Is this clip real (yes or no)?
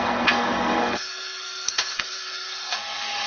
no